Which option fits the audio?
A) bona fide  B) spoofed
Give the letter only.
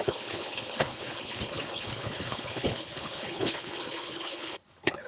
B